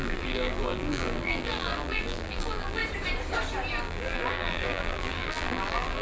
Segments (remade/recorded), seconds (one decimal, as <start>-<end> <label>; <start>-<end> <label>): 0.0-2.8 remade; 2.8-3.8 recorded; 3.8-6.0 remade